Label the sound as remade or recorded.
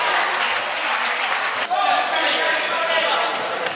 remade